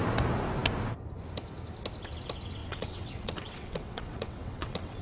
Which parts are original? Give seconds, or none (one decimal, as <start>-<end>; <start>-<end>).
0.0-2.6